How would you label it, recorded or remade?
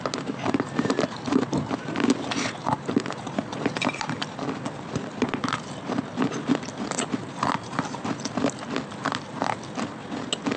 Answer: recorded